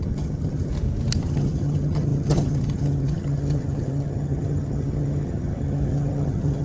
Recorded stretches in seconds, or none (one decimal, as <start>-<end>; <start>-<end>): 0.7-1.2